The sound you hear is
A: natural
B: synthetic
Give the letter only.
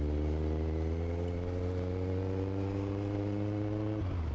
A